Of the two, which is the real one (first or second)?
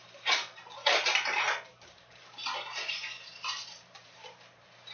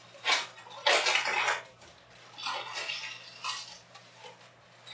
second